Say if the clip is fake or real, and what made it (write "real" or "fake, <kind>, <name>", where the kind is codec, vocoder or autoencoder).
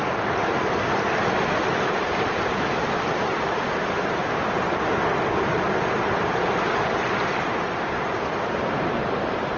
real